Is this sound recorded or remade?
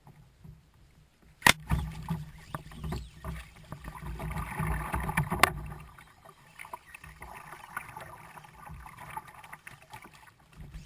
recorded